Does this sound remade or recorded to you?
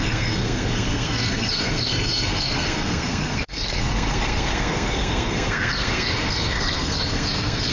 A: remade